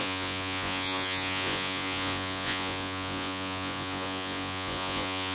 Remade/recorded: remade